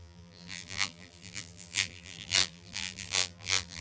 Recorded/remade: remade